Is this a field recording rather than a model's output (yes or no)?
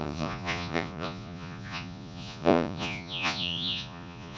no